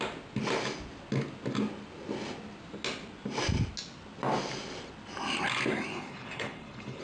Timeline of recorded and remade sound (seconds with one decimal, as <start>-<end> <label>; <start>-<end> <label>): 0.0-5.9 recorded; 5.9-7.0 remade